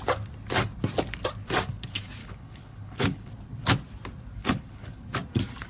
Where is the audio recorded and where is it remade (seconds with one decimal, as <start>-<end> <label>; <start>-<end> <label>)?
0.0-2.2 recorded; 2.2-3.3 remade; 3.3-4.4 recorded; 4.4-5.0 remade; 5.0-5.7 recorded